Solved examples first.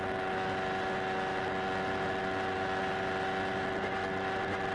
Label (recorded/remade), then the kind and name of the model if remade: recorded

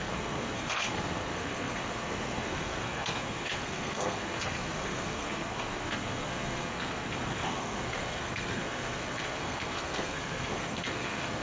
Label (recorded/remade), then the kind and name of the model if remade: remade, codec, SNAC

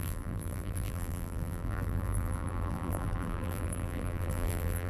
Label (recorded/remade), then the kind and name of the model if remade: remade, vocoder, BigVGAN v2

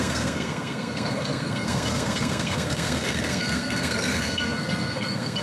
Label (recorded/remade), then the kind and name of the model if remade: remade, codec, SNAC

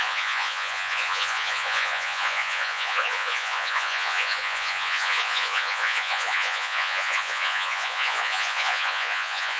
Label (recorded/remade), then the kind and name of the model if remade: remade, vocoder, Vocos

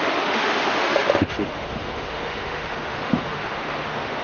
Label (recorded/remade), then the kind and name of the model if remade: remade, autoencoder, DAC-VAE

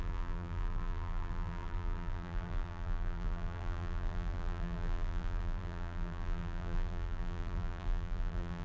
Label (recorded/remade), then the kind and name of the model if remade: remade, vocoder, BigVGAN v2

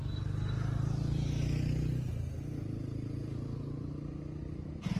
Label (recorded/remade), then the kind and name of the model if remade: recorded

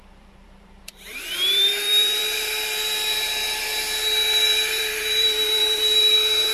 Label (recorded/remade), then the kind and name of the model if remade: remade, vocoder, BigVGAN v2